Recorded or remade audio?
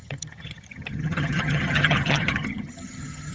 remade